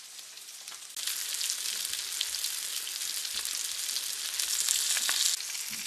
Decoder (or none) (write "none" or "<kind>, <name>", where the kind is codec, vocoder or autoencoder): none